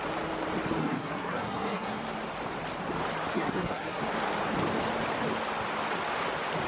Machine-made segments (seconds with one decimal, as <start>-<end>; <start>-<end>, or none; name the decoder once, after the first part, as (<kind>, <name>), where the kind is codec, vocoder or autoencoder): 0.8-2.0 (codec, SNAC); 3.3-4.0